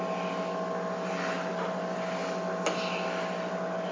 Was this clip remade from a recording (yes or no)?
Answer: no